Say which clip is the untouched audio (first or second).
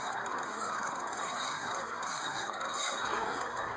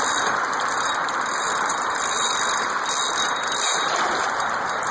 second